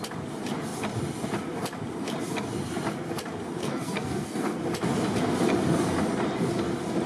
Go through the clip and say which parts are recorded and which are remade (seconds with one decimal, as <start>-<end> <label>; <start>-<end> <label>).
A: 0.0-3.6 recorded; 3.6-4.6 remade; 4.6-7.1 recorded